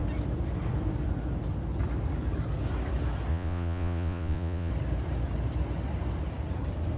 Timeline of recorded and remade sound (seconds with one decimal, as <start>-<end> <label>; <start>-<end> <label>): 0.0-3.3 recorded; 3.3-4.7 remade; 4.7-7.0 recorded